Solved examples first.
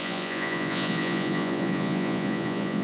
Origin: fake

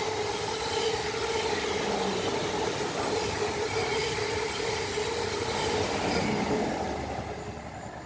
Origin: real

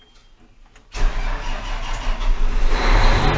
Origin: real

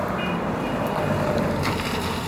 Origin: fake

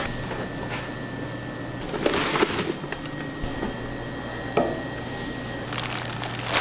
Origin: real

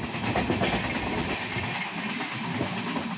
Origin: real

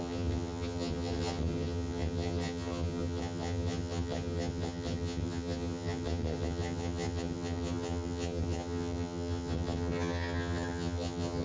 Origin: fake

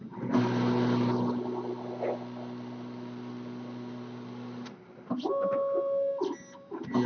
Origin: real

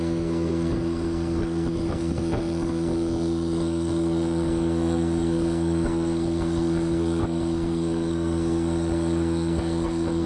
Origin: fake